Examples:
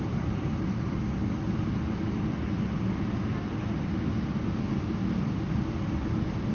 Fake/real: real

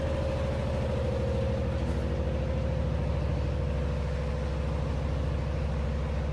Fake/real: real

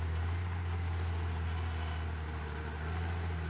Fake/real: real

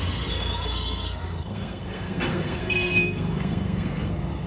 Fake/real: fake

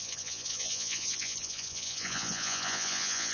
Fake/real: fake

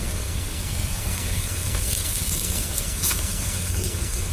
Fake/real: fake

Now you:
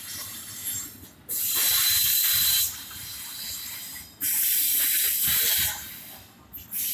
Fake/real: real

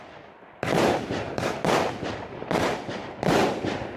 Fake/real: real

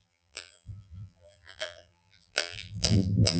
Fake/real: fake